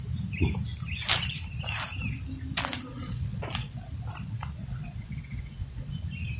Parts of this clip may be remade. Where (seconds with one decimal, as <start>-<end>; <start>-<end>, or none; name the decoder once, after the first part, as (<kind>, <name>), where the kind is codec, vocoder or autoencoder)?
2.9-3.9 (vocoder, Vocos); 4.6-5.9